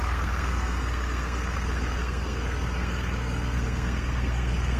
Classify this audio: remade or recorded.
remade